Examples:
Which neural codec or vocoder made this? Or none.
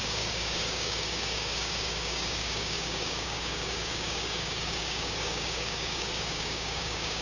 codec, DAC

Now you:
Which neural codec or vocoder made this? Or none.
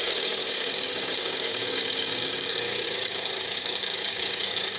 codec, DAC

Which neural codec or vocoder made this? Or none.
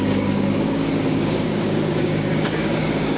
codec, DAC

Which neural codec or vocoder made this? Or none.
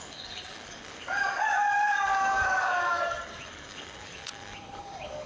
codec, DAC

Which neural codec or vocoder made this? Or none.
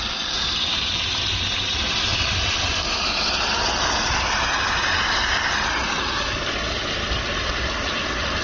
none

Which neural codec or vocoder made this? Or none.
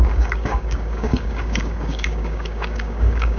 codec, DAC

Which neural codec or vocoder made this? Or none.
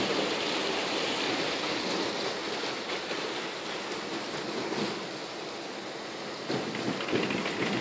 none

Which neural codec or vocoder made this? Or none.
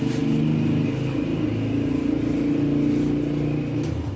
none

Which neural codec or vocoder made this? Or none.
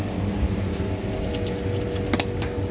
none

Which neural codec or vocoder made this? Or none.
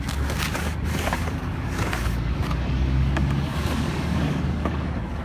codec, DAC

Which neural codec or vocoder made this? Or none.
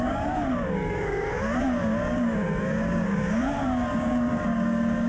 codec, DAC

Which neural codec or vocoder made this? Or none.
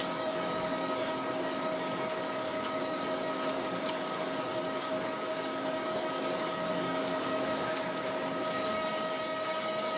codec, DAC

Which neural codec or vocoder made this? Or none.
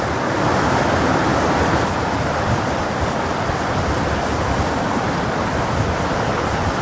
none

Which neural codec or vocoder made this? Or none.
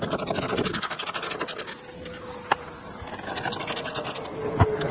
none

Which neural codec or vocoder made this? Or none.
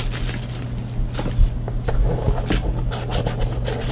none